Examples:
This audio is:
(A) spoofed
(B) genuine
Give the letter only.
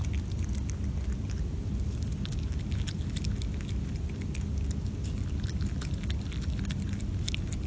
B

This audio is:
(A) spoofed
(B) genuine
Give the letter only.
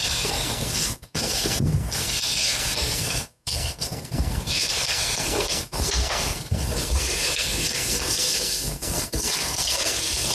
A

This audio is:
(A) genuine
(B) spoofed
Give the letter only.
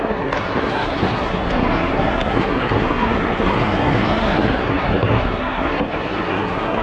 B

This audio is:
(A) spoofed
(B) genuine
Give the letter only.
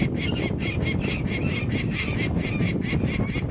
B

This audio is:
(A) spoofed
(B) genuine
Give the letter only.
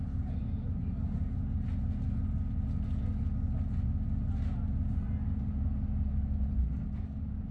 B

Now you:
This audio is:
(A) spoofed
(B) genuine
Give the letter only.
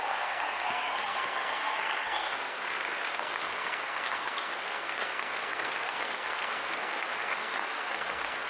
A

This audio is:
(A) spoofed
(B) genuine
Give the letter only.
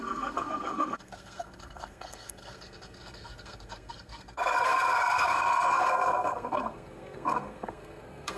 A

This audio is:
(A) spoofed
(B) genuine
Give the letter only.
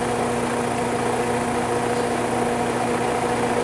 B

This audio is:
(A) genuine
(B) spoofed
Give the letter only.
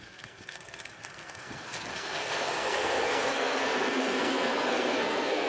B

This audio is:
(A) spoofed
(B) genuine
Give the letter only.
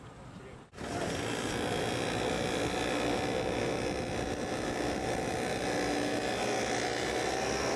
B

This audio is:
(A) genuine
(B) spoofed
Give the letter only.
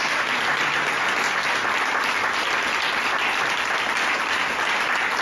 A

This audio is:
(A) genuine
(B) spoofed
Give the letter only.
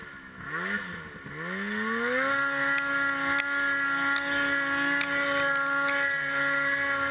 A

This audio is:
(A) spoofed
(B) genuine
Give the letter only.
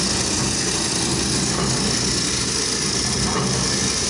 B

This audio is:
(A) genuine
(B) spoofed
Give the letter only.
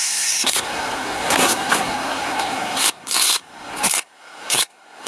B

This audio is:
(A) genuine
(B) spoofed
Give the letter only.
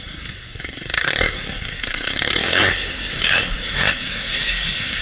B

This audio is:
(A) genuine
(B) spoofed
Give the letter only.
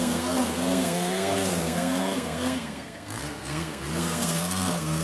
B